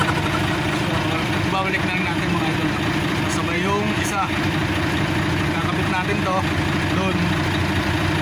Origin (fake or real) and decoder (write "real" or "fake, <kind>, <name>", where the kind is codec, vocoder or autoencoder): real